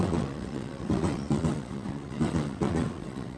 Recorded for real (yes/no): no